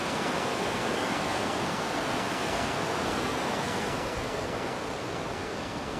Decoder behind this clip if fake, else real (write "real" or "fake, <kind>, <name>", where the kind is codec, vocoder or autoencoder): fake, codec, SNAC